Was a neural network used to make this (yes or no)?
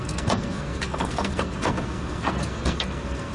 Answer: yes